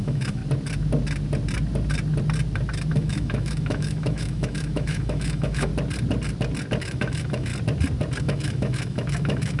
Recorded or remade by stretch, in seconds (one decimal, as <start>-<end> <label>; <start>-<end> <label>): 0.0-0.4 remade; 0.4-2.9 recorded; 2.9-5.7 remade; 5.7-6.8 recorded; 6.8-7.5 remade; 7.5-8.2 recorded; 8.2-9.6 remade